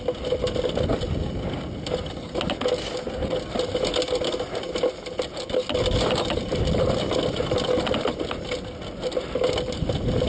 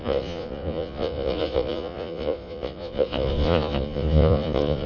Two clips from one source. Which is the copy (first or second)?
second